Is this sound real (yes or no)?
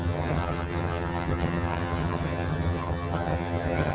no